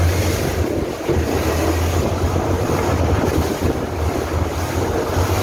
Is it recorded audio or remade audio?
recorded